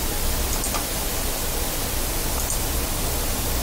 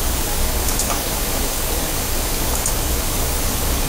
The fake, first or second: second